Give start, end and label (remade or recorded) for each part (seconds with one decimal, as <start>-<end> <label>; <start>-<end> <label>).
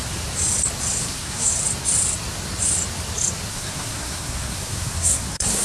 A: 0.0-1.0 recorded; 1.0-1.5 remade; 1.5-3.5 recorded; 3.5-5.6 remade